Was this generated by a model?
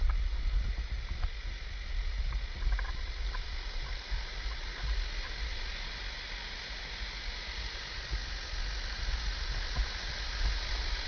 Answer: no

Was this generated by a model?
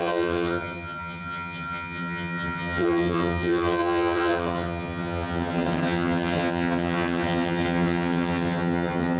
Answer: yes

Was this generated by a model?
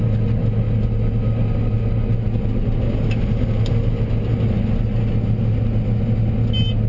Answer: no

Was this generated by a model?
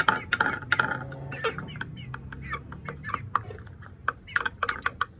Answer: no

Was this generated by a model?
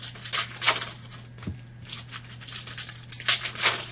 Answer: no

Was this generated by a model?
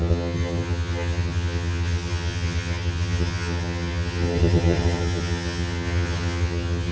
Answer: yes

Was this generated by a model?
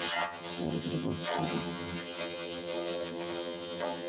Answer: yes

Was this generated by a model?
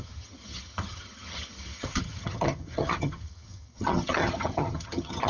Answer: yes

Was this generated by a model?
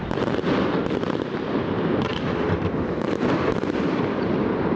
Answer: no